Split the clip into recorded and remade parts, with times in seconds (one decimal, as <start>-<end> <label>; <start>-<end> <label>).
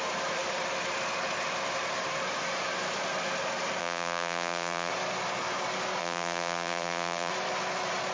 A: 0.0-3.8 recorded; 3.8-4.9 remade; 4.9-6.0 recorded; 6.0-7.3 remade; 7.3-8.1 recorded